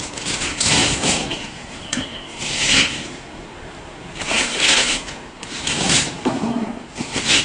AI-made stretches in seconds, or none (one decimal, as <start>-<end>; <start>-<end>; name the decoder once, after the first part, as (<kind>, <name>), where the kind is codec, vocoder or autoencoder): 0.0-7.4 (codec, SNAC)